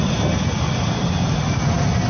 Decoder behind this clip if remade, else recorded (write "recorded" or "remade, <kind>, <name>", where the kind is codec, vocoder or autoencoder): recorded